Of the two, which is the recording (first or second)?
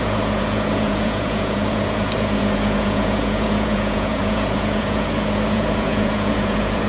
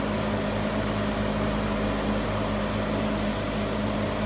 second